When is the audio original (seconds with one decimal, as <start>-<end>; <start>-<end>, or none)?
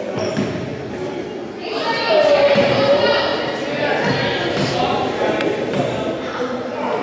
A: 0.0-7.0